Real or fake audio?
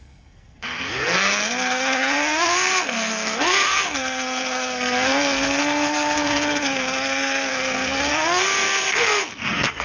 fake